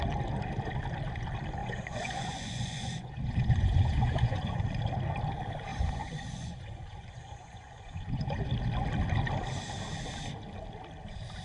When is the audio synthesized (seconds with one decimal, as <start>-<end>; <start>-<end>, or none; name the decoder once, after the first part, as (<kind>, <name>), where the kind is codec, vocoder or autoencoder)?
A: 1.6-4.6 (vocoder, Vocos); 5.7-8.5